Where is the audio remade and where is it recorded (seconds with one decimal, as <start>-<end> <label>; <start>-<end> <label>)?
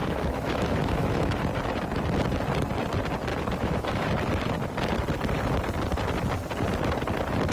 0.0-1.4 remade; 1.4-3.3 recorded; 3.3-4.1 remade; 4.1-7.5 recorded